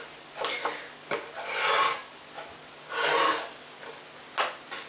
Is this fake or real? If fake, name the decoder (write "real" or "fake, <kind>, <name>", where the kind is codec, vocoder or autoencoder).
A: real